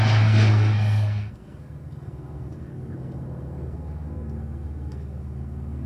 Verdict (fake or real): fake